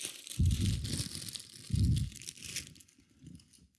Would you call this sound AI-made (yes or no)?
yes